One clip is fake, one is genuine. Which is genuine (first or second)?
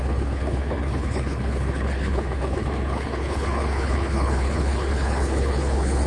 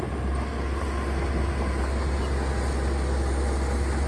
second